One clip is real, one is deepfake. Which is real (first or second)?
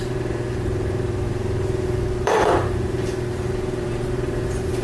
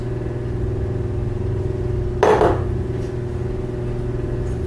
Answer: second